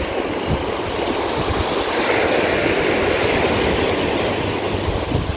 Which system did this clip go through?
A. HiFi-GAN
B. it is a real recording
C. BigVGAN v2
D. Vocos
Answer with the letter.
B